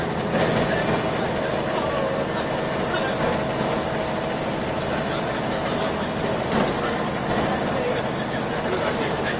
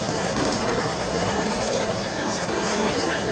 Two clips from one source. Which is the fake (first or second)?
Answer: second